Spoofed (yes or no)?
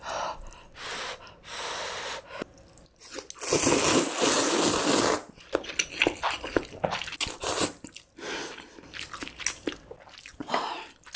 no